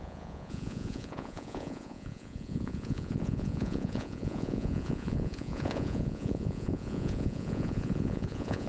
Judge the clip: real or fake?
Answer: fake